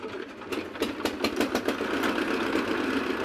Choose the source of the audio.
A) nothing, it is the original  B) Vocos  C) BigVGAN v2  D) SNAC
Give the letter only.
A